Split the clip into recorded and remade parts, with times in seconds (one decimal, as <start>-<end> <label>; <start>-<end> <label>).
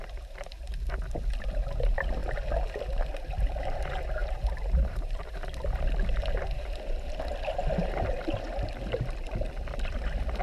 0.0-4.2 recorded; 4.2-5.8 remade; 5.8-10.4 recorded